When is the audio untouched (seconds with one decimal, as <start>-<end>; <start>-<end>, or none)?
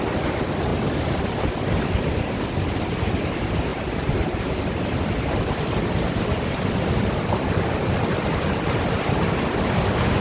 0.0-3.7; 4.6-10.2